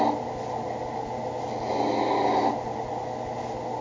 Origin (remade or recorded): recorded